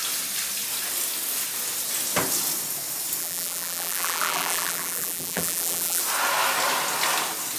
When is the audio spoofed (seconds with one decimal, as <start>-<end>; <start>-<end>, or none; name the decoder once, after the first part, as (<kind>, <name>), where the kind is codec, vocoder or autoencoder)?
3.2-6.0 (vocoder, BigVGAN v2)